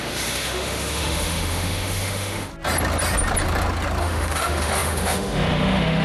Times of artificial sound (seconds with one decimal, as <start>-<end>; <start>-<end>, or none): 0.0-2.5; 4.0-6.0